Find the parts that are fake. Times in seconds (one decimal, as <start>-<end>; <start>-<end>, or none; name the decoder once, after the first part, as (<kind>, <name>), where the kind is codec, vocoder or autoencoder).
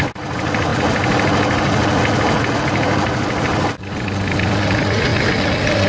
none